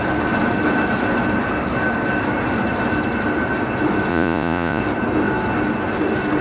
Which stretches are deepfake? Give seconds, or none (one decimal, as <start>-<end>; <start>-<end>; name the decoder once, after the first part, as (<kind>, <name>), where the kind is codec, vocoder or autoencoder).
4.1-4.8 (vocoder, Vocos)